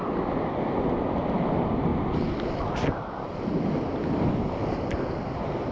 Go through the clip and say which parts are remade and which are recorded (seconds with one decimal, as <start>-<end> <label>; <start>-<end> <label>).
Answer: 0.0-5.7 recorded